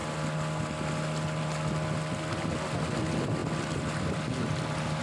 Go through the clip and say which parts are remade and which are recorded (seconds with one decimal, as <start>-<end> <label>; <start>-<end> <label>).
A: 0.0-5.0 recorded